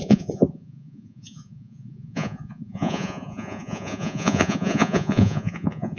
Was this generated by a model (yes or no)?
yes